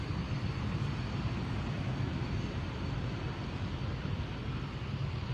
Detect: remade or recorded recorded